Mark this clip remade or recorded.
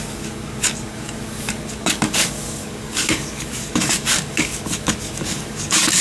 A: remade